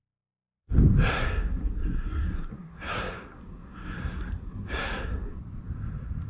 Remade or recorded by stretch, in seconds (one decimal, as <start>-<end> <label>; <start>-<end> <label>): 0.0-0.6 remade; 0.6-1.1 recorded; 1.1-5.4 remade; 5.4-6.3 recorded